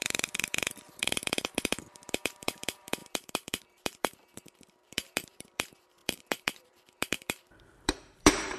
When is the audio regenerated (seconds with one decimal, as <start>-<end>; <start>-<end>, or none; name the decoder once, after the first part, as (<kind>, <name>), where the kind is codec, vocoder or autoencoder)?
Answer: 0.0-8.6 (vocoder, BigVGAN v2)